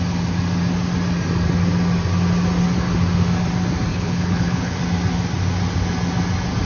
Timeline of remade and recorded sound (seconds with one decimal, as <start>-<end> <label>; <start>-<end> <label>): 0.0-3.9 recorded; 3.9-4.8 remade; 4.8-6.7 recorded